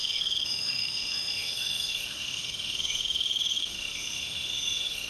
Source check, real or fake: fake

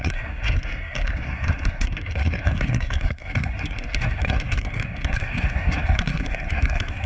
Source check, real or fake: fake